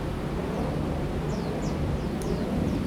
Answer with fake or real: real